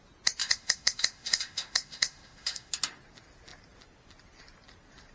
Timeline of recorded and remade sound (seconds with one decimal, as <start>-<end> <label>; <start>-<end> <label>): 0.0-0.4 recorded; 0.4-2.7 remade; 2.7-5.1 recorded